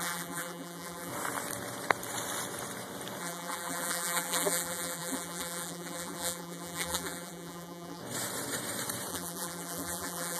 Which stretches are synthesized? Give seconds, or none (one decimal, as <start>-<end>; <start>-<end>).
0.0-1.1; 3.2-8.0; 9.1-10.4